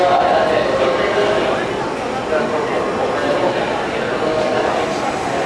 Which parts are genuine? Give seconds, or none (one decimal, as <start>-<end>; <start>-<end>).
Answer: 0.0-4.3; 4.8-5.5